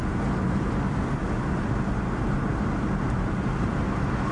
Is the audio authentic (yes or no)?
yes